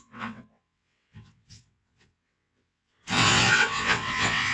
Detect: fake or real fake